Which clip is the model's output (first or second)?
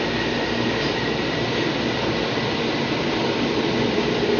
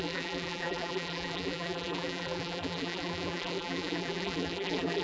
second